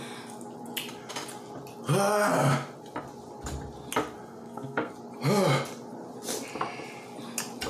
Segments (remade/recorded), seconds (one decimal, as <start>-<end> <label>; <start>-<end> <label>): 0.0-4.3 recorded; 4.3-4.9 remade; 4.9-7.7 recorded